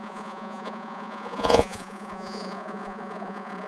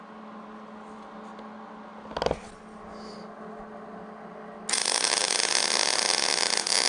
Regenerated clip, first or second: first